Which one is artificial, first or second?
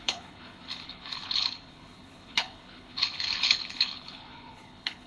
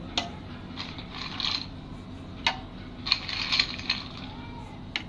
first